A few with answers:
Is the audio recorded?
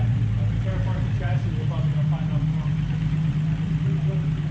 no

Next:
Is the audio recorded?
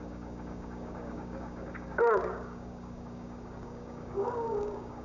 no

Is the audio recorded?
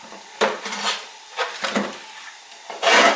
no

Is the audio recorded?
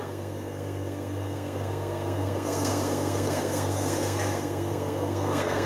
no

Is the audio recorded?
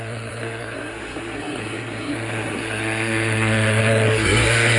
no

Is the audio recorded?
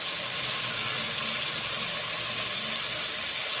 yes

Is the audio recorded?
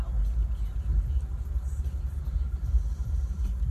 yes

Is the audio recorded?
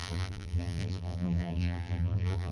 no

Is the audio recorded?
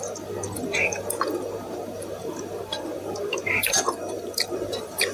no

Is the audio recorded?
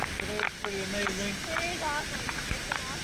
yes